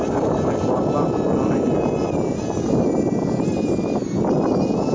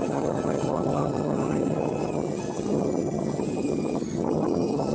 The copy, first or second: second